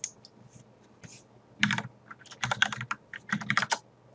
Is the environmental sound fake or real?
real